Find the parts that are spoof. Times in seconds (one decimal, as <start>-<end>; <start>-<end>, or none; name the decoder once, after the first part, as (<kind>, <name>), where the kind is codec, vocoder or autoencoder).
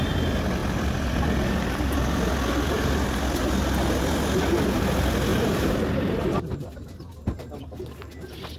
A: 5.3-7.4 (vocoder, BigVGAN v2)